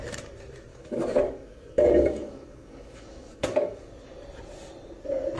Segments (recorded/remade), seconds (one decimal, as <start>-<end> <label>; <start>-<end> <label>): 0.0-0.7 recorded; 0.7-3.9 remade; 3.9-5.4 recorded